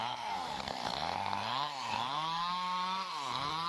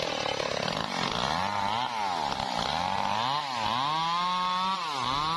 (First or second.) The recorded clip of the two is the second